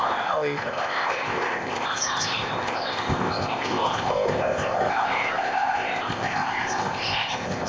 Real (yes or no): no